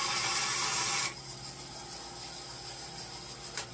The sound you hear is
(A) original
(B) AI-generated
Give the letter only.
A